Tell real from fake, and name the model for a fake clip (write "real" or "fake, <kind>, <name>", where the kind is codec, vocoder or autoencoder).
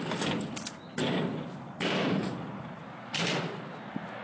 real